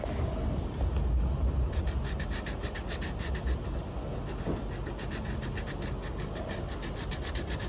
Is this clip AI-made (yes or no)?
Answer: no